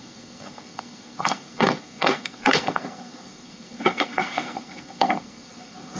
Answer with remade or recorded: remade